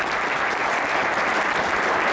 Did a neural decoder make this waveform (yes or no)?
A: no